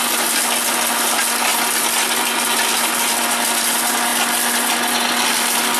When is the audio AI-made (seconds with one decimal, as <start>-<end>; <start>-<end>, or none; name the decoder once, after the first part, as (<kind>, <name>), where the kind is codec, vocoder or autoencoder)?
none